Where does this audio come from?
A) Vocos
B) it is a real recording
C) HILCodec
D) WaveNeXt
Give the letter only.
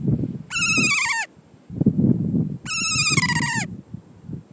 B